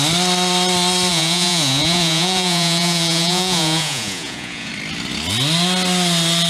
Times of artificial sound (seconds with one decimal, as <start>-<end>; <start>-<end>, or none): 1.1-4.7